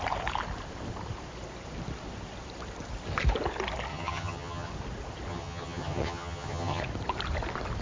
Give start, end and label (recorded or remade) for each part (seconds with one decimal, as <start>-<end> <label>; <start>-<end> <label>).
0.0-3.9 recorded; 3.9-4.7 remade; 4.7-5.3 recorded; 5.3-6.8 remade; 6.8-7.8 recorded